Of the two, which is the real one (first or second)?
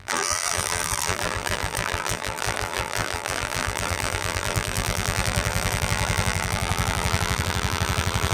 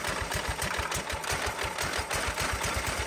second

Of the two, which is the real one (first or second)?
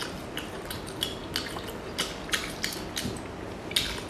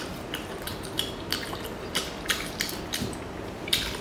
first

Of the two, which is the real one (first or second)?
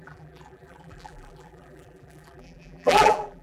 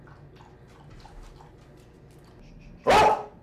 second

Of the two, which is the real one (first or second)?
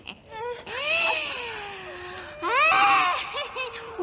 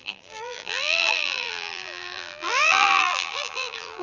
first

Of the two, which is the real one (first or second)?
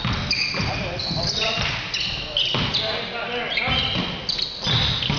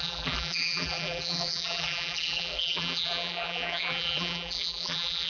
first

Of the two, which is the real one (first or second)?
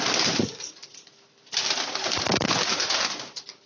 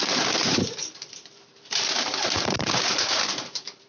first